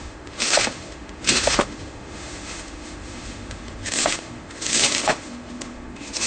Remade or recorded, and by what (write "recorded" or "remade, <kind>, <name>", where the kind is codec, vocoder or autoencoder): remade, autoencoder, DAC-VAE